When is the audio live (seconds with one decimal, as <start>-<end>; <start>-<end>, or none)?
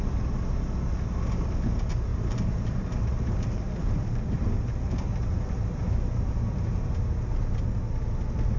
0.0-2.1; 6.9-8.6